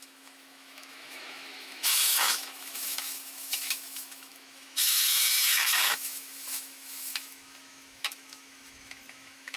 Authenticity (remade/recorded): remade